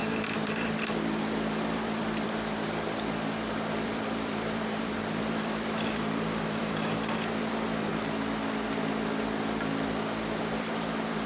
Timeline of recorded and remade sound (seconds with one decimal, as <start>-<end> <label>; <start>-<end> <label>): 0.0-7.9 remade; 7.9-10.4 recorded; 10.4-11.3 remade